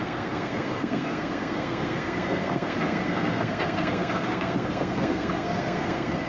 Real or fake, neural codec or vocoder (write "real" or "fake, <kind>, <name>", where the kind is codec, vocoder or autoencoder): fake, codec, SNAC